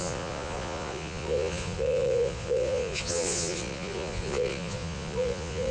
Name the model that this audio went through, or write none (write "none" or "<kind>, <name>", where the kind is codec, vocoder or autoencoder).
vocoder, Vocos